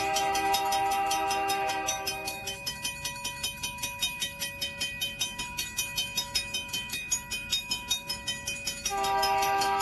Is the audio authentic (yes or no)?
no